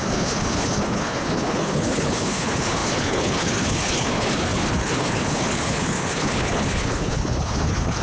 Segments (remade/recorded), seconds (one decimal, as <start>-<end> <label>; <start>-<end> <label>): 0.0-8.0 remade